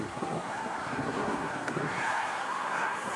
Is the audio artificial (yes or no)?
yes